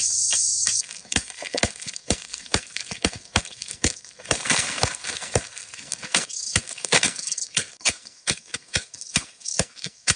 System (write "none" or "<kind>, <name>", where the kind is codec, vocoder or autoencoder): codec, SNAC